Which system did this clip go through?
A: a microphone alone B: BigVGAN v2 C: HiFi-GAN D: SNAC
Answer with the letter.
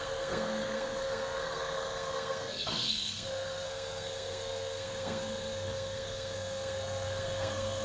D